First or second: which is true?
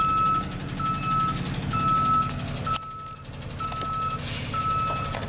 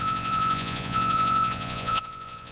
first